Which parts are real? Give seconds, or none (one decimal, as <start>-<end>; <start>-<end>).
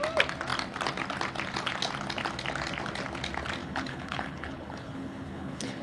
0.0-3.6